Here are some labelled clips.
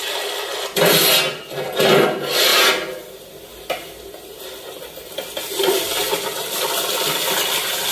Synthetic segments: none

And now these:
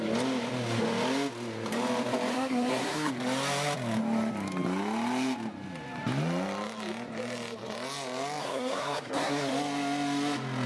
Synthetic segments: 2.3-3.1 (codec, SNAC); 8.4-9.5

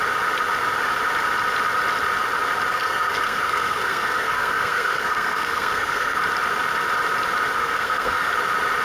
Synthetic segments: 2.7-6.2 (codec, SNAC); 7.6-8.3

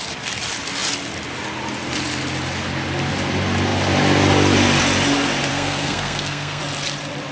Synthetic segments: 5.5-6.6 (codec, SNAC)

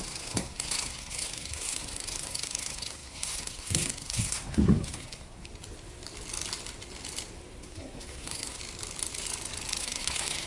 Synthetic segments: 0.0-5.5 (codec, SNAC); 7.6-8.6; 9.8-10.5

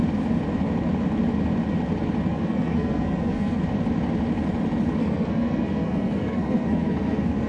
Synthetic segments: 2.3-3.6 (codec, SNAC); 5.0-7.5

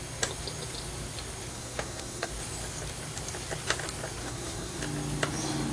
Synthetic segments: 1.5-2.3 (codec, SNAC); 4.2-4.8

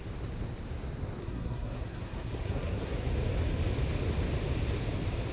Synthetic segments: 1.2-3.1 (codec, SNAC)